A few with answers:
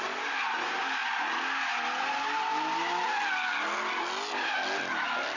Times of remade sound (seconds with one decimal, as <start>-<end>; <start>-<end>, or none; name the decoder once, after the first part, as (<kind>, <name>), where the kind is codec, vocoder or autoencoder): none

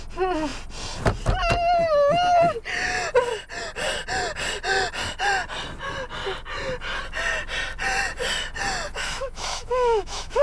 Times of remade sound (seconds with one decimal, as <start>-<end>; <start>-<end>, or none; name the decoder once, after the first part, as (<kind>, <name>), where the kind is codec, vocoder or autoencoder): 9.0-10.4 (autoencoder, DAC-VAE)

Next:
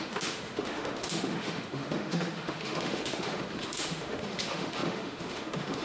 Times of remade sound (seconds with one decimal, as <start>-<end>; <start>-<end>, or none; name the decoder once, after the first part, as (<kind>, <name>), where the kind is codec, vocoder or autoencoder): 0.0-5.8 (autoencoder, DAC-VAE)

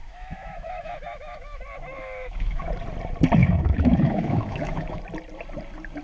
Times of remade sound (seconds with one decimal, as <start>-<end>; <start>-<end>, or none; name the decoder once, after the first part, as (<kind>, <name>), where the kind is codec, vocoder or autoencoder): 0.0-1.6 (autoencoder, DAC-VAE); 2.0-2.7; 3.4-5.0

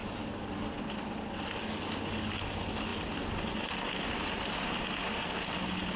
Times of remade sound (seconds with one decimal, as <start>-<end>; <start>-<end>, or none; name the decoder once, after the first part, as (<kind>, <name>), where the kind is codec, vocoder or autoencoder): none

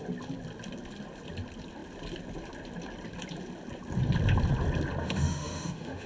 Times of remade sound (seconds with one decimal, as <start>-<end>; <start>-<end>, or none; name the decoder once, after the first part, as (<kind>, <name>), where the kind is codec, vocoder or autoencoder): 5.0-6.1 (autoencoder, DAC-VAE)

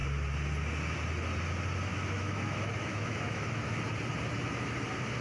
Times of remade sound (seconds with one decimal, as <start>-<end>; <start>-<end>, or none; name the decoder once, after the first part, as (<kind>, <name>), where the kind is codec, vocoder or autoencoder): 1.9-3.8 (autoencoder, DAC-VAE)